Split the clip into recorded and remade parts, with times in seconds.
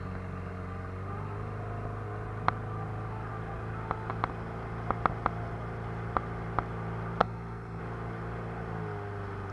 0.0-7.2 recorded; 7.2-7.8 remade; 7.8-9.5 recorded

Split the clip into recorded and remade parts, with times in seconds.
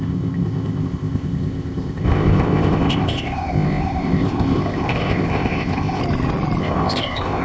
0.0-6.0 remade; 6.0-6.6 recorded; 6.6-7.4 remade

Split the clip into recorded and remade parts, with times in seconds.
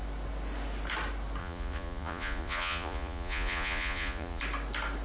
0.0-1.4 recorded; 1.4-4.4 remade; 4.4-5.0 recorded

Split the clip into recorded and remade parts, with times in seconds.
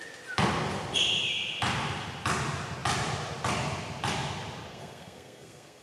0.0-4.7 recorded; 4.7-5.8 remade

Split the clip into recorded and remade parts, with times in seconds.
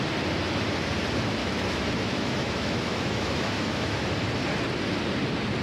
0.0-1.4 recorded; 1.4-4.0 remade; 4.0-5.6 recorded